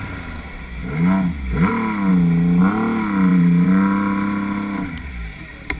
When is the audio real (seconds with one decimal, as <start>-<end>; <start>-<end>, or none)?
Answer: 0.0-3.3; 5.1-5.8